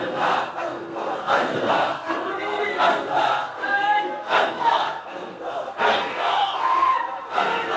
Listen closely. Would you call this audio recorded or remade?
remade